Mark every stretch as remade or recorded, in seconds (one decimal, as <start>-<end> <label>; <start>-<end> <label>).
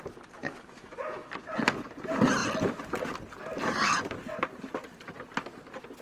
0.0-0.4 recorded; 0.4-1.3 remade; 1.3-6.0 recorded